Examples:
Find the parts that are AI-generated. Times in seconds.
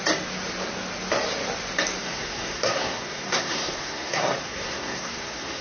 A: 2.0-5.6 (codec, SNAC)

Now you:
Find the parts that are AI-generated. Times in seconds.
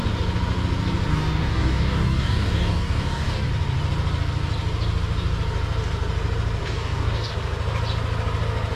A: 1.1-3.5 (codec, DAC); 6.6-7.3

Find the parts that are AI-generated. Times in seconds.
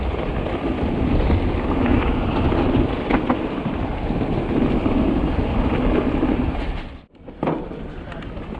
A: 1.9-6.5 (vocoder, BigVGAN v2)